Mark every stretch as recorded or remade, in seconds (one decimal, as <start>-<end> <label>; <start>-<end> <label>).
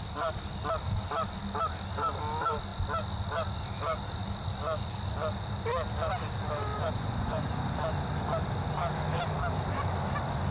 0.0-6.7 recorded; 6.7-7.6 remade; 7.6-10.5 recorded